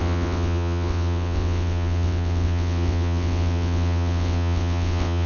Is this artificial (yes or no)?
yes